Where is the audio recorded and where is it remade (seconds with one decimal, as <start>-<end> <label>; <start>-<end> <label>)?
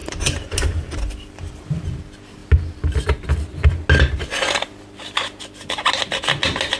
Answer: 0.0-1.8 remade; 1.8-6.8 recorded